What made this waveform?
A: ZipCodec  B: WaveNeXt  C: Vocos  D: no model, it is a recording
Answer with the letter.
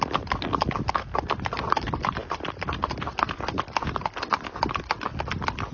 D